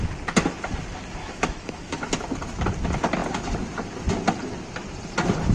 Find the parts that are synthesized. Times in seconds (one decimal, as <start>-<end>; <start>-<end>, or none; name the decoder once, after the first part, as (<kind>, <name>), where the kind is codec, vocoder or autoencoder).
1.2-2.0 (autoencoder, DAC-VAE)